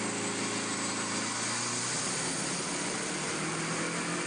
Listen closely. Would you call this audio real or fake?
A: real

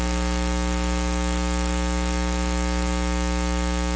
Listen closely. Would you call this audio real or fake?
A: real